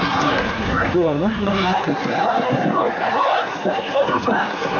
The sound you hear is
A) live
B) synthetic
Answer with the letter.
B